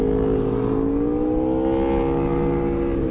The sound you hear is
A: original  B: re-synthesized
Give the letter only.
A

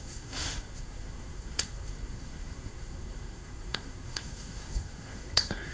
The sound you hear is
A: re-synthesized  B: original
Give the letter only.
A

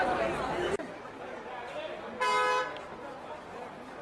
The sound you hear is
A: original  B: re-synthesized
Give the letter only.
A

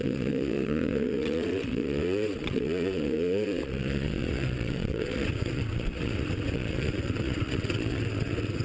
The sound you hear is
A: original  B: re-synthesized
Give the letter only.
B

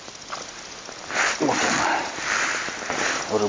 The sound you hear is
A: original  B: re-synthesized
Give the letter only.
A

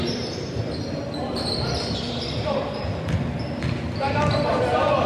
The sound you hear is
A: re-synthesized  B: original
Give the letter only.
B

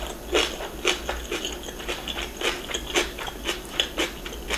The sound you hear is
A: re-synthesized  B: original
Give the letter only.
B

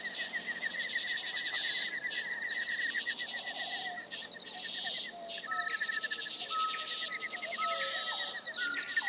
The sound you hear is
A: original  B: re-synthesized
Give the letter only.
A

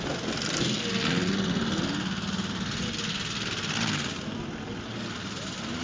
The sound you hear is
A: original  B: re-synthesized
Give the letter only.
A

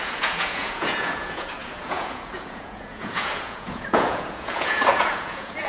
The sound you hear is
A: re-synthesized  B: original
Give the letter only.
A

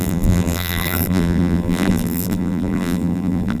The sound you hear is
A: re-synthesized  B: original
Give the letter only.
A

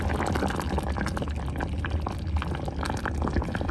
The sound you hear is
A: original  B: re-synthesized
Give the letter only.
A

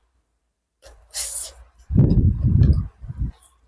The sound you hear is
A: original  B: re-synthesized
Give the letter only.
B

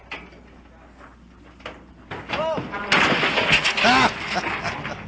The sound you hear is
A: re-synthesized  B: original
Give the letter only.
B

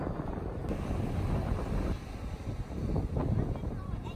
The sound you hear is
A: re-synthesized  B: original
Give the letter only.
B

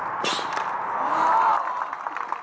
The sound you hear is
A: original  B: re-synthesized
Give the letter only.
A